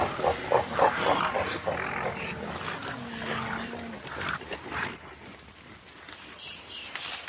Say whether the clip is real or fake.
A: real